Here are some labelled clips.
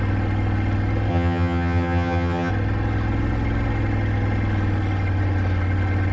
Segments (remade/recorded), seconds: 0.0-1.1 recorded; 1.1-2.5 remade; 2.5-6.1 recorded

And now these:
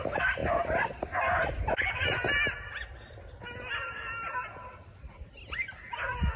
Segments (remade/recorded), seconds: 0.0-6.4 recorded

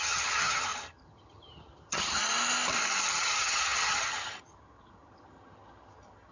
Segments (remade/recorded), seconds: 0.0-2.2 remade; 2.2-3.0 recorded; 3.0-6.3 remade

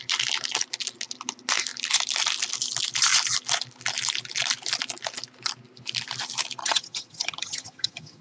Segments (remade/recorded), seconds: 0.0-6.6 recorded; 6.6-8.2 remade

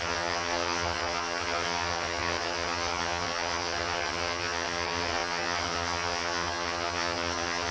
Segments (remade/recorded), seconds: 0.0-7.7 remade

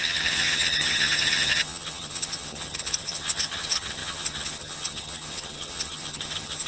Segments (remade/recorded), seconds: 0.0-6.7 remade

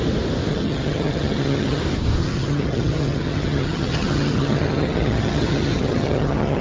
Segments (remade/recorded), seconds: 0.0-0.5 recorded; 0.5-1.8 remade; 1.8-2.2 recorded; 2.2-6.6 remade

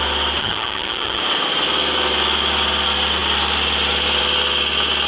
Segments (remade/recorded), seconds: 0.0-0.4 recorded; 0.4-1.2 remade; 1.2-5.1 recorded